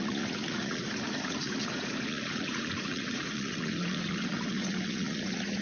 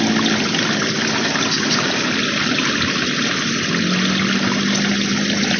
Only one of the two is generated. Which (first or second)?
first